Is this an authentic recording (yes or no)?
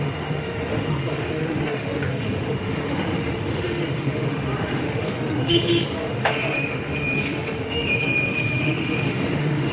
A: no